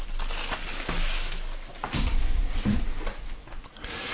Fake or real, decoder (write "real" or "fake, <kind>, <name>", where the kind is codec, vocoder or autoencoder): real